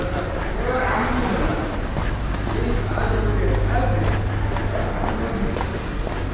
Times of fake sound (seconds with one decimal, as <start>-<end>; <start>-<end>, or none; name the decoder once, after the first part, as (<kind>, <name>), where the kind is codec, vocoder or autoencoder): none